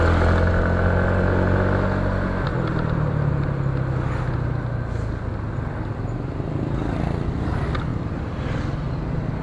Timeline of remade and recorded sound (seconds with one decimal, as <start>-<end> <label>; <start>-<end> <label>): 0.0-2.5 recorded; 2.5-3.3 remade; 3.3-7.9 recorded; 7.9-8.4 remade; 8.4-9.4 recorded